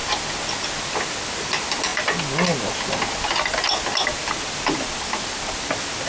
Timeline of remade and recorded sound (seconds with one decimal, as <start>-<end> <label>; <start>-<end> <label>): 0.0-6.1 recorded